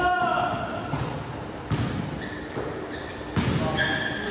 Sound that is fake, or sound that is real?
real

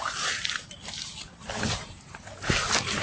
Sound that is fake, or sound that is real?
fake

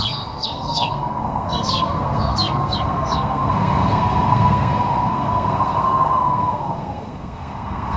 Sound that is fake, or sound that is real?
fake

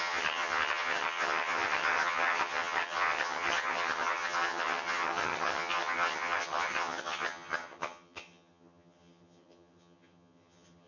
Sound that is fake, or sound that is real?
fake